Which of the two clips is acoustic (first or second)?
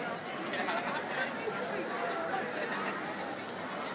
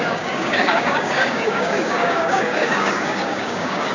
first